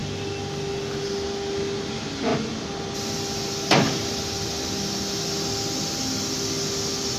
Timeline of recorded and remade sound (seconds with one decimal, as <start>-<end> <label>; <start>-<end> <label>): 0.0-7.2 recorded